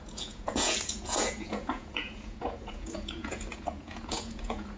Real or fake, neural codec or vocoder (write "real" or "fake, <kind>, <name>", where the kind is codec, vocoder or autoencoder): fake, vocoder, Vocos